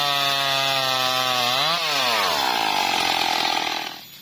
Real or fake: real